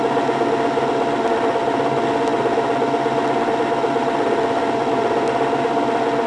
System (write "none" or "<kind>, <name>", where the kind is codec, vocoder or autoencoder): none